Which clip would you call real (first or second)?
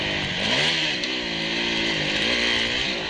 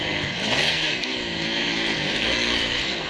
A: first